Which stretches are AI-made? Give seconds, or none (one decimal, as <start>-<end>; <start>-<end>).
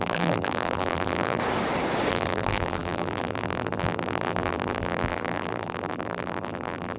0.0-1.4; 2.1-7.0